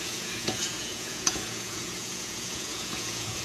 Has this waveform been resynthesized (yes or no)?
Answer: yes